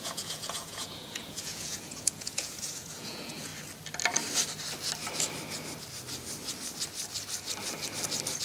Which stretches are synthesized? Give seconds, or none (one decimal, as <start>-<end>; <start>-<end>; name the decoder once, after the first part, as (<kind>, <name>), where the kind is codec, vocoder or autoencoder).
0.0-3.5 (vocoder, Vocos)